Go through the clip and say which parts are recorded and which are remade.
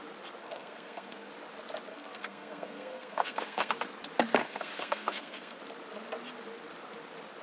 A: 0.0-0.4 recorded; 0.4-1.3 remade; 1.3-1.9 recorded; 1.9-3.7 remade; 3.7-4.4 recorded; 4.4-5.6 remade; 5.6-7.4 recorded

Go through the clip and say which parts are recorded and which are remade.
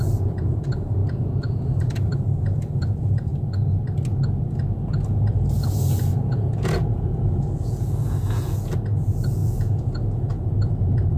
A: 0.0-3.3 remade; 3.3-6.2 recorded; 6.2-11.2 remade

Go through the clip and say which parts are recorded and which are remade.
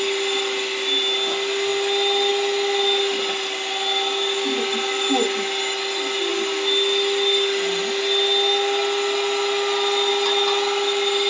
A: 0.0-11.3 recorded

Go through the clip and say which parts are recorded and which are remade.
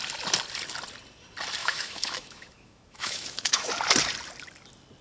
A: 0.0-1.6 recorded; 1.6-3.7 remade; 3.7-5.0 recorded